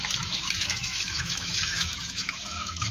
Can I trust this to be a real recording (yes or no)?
no